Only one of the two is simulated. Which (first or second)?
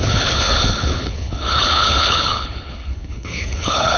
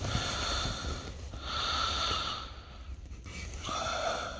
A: first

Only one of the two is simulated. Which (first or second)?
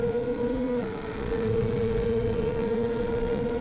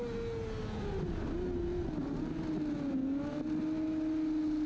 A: first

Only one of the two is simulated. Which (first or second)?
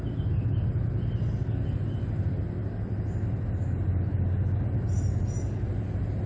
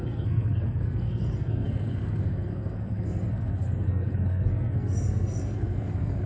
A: second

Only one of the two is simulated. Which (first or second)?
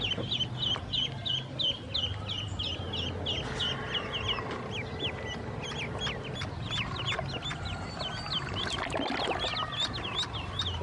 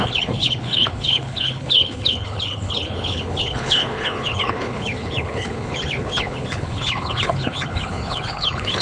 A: second